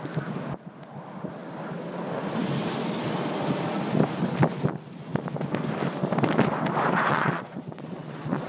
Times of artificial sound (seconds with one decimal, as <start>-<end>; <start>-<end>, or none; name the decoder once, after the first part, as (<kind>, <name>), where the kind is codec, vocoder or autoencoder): 7.1-8.5 (vocoder, Vocos)

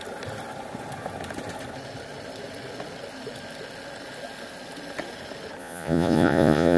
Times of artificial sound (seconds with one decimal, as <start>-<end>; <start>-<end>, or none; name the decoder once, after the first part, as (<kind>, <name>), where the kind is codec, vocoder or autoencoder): 5.6-6.8 (vocoder, Vocos)

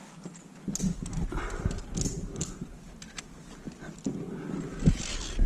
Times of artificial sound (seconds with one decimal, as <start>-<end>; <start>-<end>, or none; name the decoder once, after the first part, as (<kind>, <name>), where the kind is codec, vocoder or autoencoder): none

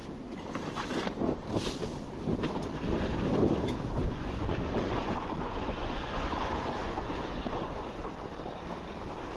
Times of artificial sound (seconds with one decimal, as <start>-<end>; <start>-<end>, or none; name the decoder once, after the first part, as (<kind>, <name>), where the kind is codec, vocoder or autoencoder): 4.0-8.1 (vocoder, Vocos)

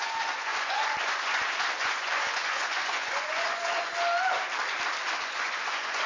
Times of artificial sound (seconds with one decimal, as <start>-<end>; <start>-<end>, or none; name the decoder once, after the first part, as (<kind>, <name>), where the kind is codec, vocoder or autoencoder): 0.0-3.9 (vocoder, Vocos); 5.1-6.1